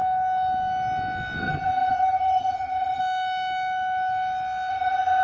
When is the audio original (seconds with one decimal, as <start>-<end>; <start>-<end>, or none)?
0.0-1.4; 3.0-4.7